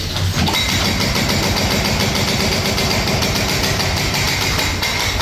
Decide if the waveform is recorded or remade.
recorded